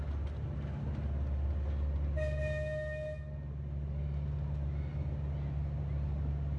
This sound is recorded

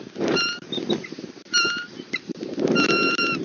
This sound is recorded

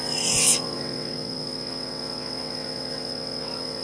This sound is remade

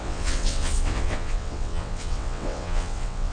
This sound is remade